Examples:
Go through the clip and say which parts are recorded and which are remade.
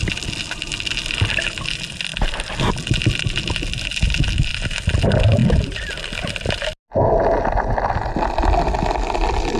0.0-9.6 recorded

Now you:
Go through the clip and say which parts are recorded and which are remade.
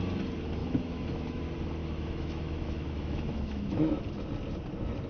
0.0-0.6 recorded; 0.6-1.4 remade; 1.4-1.8 recorded; 1.8-4.0 remade; 4.0-5.1 recorded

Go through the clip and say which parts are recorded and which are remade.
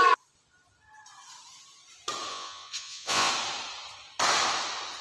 0.0-2.3 recorded; 2.3-3.3 remade; 3.3-5.0 recorded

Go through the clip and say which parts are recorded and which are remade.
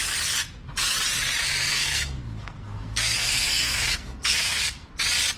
0.0-1.7 recorded; 1.7-4.9 remade; 4.9-5.4 recorded